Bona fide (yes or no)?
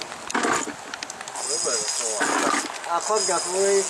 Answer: yes